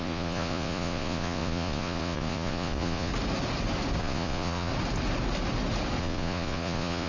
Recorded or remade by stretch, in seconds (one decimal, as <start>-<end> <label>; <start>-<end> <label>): 0.0-3.1 remade; 3.1-4.0 recorded; 4.0-4.7 remade; 4.7-6.0 recorded; 6.0-7.1 remade